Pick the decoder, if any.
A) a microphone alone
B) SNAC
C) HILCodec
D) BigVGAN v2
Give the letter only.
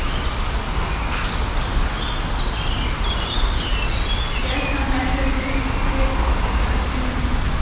A